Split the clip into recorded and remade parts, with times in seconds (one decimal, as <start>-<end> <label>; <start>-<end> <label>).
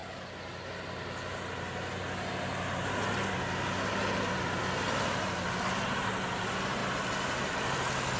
0.0-6.8 recorded; 6.8-7.5 remade; 7.5-8.2 recorded